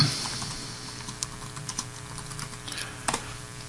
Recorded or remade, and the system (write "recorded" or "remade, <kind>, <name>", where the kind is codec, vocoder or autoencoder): recorded